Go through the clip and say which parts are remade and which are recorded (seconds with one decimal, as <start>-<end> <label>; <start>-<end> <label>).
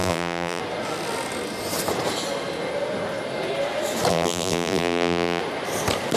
0.0-0.6 remade; 0.6-4.1 recorded; 4.1-5.4 remade; 5.4-6.2 recorded